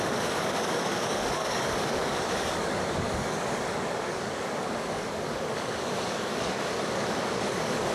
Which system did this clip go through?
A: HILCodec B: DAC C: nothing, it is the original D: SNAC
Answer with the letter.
B